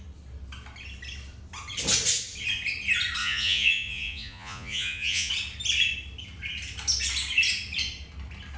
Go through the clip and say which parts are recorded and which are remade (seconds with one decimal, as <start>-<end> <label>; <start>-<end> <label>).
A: 0.0-3.2 recorded; 3.2-5.3 remade; 5.3-8.6 recorded